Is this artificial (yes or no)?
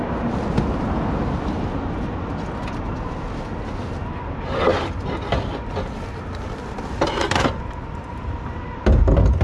no